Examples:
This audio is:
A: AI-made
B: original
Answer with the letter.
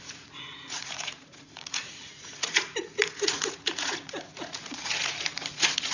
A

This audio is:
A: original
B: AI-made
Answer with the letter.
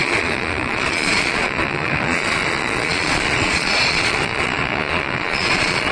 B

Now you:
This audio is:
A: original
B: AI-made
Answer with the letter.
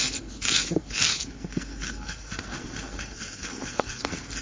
B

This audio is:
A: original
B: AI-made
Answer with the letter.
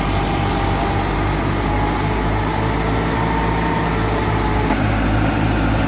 A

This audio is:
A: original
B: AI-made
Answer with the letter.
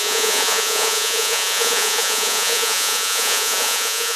B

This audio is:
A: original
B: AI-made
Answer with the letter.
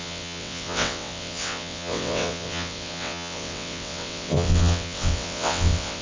B